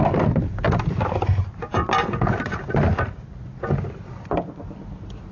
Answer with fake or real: real